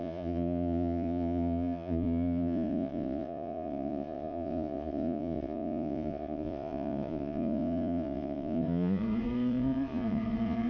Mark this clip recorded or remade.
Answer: remade